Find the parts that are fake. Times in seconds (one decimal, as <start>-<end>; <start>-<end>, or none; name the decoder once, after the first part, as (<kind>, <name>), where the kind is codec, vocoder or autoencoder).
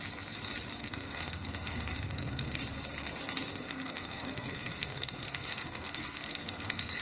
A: 0.8-2.6 (codec, SNAC); 3.5-7.0